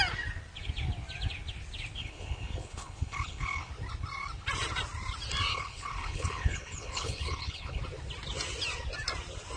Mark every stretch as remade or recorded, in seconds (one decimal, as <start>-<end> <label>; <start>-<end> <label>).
0.0-2.0 recorded; 2.0-3.7 remade; 3.7-5.5 recorded; 5.5-7.8 remade; 7.8-9.6 recorded